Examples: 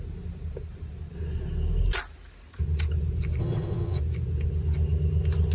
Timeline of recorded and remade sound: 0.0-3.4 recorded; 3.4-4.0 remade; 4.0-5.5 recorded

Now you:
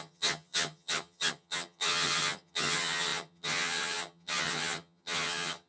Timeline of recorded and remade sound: 0.0-5.7 remade

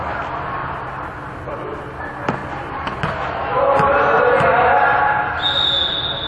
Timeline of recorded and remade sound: 0.0-6.3 recorded

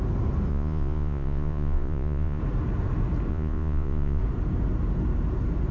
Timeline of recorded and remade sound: 0.0-0.5 recorded; 0.5-2.4 remade; 2.4-3.3 recorded; 3.3-4.2 remade; 4.2-5.7 recorded

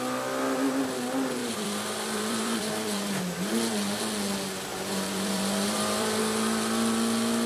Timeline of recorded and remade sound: 0.0-1.4 recorded; 1.4-3.2 remade; 3.2-4.7 recorded; 4.7-6.2 remade; 6.2-7.5 recorded

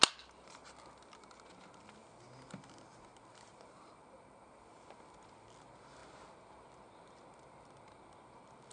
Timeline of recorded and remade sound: 0.0-8.7 recorded